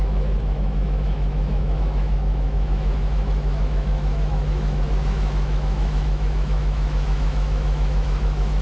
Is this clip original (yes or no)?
no